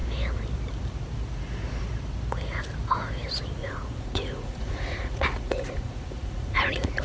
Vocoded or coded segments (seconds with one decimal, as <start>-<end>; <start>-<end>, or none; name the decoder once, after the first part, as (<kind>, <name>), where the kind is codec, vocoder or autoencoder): 3.6-7.0 (vocoder, Vocos)